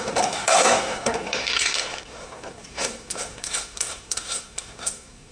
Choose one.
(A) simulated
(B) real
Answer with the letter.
A